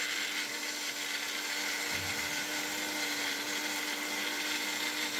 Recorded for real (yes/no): yes